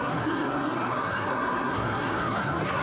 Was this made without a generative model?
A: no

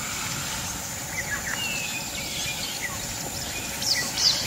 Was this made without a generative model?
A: yes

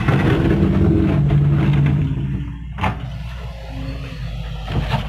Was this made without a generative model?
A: yes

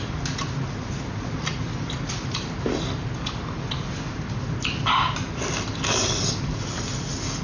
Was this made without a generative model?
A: yes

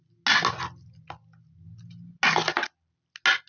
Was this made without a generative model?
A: yes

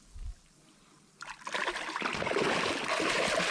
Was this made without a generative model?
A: yes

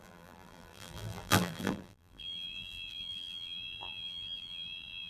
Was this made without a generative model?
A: no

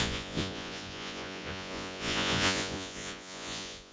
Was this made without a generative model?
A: no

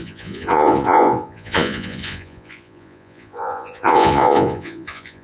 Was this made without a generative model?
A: no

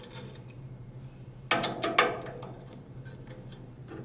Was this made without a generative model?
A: yes